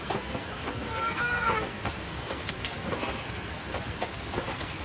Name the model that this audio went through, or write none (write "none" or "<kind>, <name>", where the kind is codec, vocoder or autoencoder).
codec, SNAC